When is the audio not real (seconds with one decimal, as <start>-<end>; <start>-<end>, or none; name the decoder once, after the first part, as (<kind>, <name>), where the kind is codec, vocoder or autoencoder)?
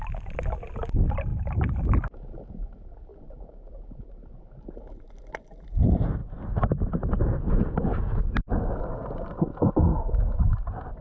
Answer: none